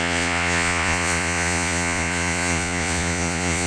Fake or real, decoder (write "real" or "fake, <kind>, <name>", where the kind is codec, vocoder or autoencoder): fake, vocoder, Vocos